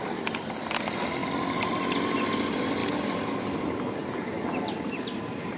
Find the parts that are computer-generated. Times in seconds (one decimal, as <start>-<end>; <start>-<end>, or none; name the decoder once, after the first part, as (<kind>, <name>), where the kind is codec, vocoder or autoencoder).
4.0-5.6 (vocoder, BigVGAN v2)